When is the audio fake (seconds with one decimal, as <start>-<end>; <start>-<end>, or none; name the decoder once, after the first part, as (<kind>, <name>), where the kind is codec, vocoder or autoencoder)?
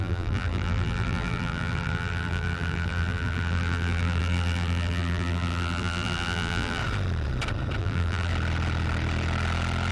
0.0-6.8 (vocoder, BigVGAN v2); 7.8-8.3